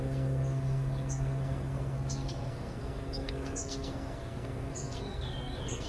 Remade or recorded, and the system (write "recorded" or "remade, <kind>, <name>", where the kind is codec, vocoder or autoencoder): remade, codec, SNAC